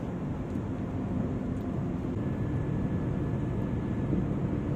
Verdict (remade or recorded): recorded